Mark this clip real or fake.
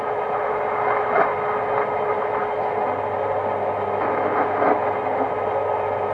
real